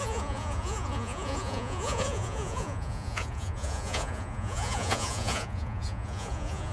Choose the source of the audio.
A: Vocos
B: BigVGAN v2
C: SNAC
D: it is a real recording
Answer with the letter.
A